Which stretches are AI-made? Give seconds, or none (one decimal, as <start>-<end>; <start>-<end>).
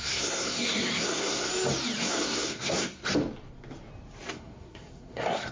0.0-1.5; 2.0-3.0; 4.3-5.5